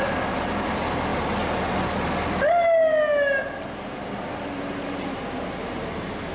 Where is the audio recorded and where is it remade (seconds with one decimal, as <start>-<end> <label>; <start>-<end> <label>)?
0.0-6.3 recorded